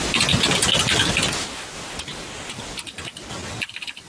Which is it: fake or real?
real